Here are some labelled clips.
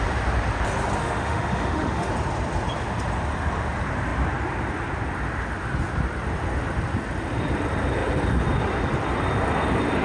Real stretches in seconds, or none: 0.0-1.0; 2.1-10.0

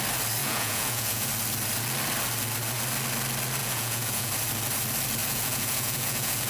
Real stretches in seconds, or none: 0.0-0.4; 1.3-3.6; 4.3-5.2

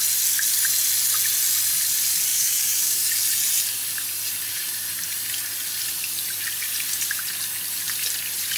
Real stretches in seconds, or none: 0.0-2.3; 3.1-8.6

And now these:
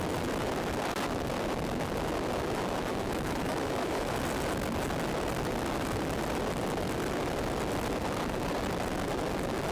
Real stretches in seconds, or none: 0.0-2.9; 4.2-9.7

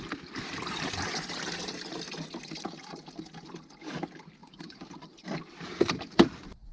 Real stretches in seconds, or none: 0.0-4.4; 6.0-6.7